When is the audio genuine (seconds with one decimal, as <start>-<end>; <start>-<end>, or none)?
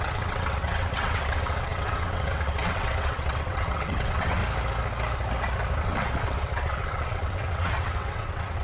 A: 4.4-5.8